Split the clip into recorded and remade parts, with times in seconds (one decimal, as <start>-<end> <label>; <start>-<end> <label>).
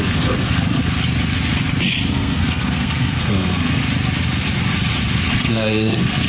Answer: 0.0-0.8 remade; 0.8-2.1 recorded; 2.1-3.8 remade; 3.8-5.3 recorded; 5.3-6.3 remade